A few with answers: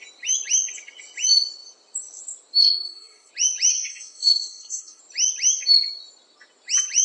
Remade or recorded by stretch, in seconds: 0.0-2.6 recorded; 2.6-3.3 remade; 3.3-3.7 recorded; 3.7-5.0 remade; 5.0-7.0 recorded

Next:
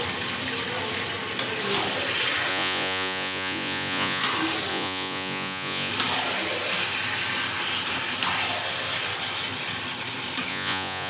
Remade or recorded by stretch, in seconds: 0.0-2.5 recorded; 2.5-4.2 remade; 4.2-4.7 recorded; 4.7-5.9 remade; 5.9-10.5 recorded; 10.5-11.1 remade

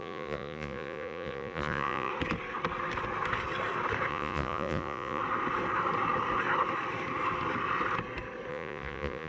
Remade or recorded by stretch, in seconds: 0.0-2.1 remade; 2.1-4.1 recorded; 4.1-5.2 remade; 5.2-8.5 recorded; 8.5-9.3 remade